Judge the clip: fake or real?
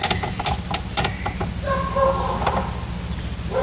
real